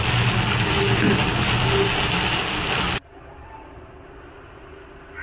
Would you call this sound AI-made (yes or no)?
no